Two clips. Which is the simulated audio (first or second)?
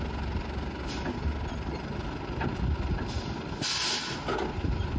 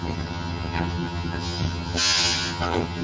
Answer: second